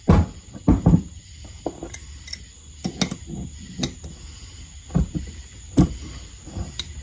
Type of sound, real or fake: real